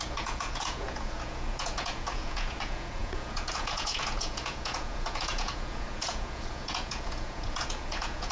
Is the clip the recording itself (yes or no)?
no